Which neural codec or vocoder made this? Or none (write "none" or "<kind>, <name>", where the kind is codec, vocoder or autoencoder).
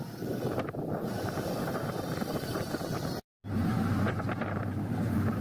vocoder, BigVGAN v2